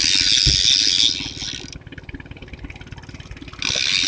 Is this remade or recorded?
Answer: recorded